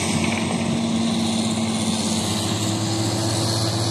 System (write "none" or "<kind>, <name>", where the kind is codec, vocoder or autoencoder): none